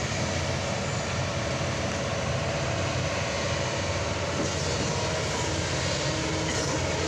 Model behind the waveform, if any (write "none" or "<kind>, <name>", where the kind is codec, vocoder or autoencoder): none